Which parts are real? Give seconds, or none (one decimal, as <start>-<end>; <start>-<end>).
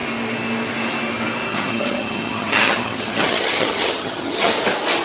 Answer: 0.0-1.5; 4.5-5.0